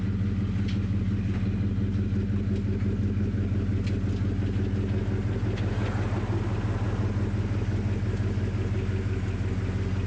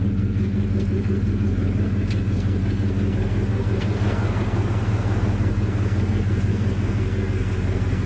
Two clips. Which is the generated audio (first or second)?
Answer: second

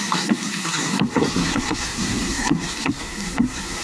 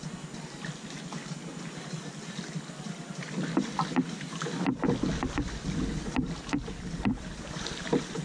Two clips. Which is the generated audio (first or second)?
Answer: first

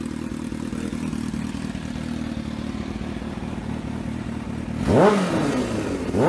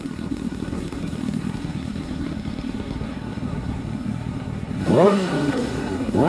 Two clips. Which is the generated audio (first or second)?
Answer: second